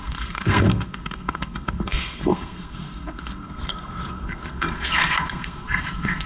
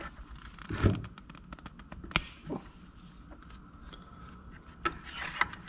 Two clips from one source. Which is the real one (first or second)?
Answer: second